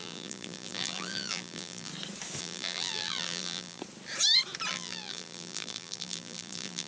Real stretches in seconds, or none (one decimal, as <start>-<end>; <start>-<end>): 1.9-2.4; 3.8-4.7